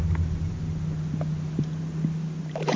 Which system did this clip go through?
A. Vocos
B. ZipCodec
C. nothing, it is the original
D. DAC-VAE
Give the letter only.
C